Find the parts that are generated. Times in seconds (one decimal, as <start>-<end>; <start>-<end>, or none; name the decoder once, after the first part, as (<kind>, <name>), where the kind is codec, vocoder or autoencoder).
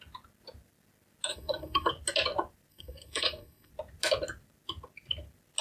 1.3-1.9 (codec, SNAC); 2.7-3.7